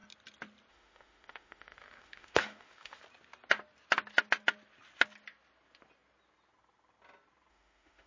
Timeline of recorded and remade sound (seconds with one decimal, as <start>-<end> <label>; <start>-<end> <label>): 0.0-0.7 recorded; 0.7-3.0 remade; 3.0-7.5 recorded; 7.5-8.1 remade